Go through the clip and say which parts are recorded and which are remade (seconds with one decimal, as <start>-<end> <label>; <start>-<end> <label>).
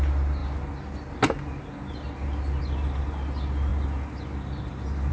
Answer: 0.0-5.1 recorded